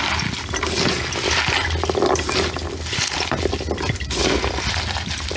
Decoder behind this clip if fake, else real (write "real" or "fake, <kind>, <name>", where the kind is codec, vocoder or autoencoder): real